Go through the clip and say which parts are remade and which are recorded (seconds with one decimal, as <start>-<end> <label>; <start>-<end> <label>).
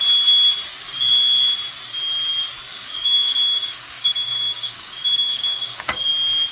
0.0-2.7 recorded; 2.7-6.1 remade; 6.1-6.5 recorded